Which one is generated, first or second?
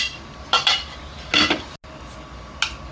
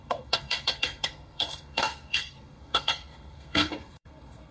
second